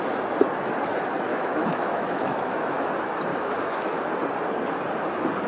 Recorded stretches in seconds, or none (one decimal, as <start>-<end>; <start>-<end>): 0.0-1.3; 2.9-3.3; 4.1-5.5